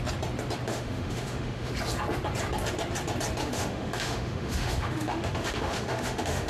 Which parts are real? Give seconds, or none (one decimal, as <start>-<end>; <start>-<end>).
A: 0.0-0.7; 1.7-3.4